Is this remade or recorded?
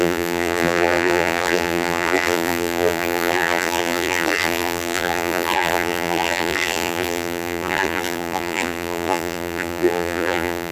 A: remade